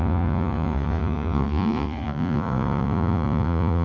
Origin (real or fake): fake